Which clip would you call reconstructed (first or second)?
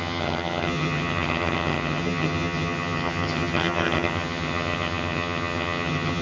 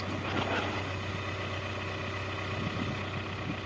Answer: first